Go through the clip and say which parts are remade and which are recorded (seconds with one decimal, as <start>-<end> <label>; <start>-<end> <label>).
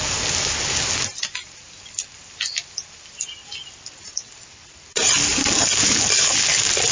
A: 0.0-6.9 recorded